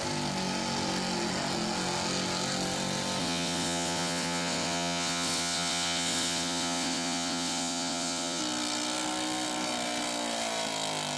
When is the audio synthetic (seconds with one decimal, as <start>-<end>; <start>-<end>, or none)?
3.2-8.4